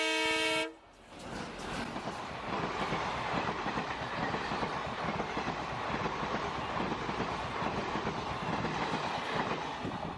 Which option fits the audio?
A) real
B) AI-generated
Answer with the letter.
A